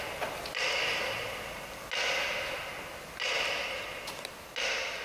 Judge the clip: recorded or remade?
recorded